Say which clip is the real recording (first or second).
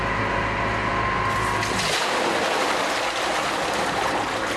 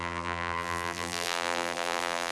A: first